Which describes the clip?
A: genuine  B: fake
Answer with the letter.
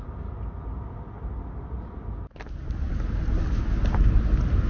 A